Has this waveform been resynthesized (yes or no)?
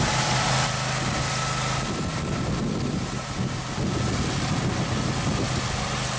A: no